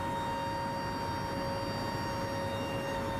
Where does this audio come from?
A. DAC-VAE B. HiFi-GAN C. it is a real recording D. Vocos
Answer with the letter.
C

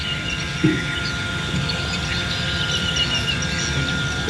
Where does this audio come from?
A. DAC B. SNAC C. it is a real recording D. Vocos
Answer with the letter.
C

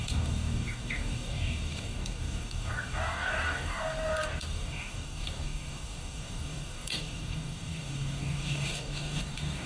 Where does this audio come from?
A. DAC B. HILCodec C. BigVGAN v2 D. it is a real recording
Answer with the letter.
A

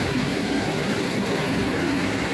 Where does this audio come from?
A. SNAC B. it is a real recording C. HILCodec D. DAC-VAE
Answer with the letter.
A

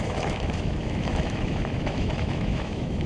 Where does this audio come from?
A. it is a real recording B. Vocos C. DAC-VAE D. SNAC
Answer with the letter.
C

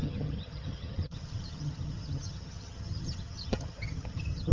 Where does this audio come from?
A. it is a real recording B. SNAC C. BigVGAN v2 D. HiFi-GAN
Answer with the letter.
D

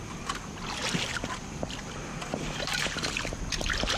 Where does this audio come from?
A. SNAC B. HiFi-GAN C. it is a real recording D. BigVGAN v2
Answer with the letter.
C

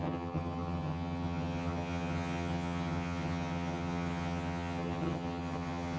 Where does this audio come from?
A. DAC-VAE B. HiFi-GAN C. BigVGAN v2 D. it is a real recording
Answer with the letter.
B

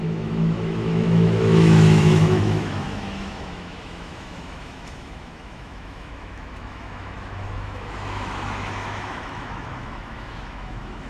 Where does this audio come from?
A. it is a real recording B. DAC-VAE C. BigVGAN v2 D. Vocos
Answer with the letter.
B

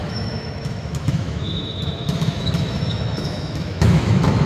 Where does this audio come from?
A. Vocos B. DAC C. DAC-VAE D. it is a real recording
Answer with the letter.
C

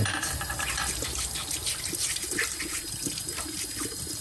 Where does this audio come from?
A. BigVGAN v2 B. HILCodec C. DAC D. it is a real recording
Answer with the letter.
D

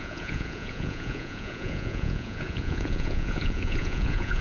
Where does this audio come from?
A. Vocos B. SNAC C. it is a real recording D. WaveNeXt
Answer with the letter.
A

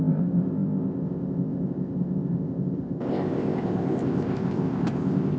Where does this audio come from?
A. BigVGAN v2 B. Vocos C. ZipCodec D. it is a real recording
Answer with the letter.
C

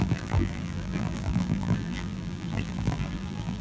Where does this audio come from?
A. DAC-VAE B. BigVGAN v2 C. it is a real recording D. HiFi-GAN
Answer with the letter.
B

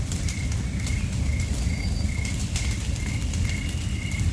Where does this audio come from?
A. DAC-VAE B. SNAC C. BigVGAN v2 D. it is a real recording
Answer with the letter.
D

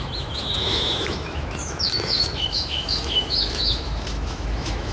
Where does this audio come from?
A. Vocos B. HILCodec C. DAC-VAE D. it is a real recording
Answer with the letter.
C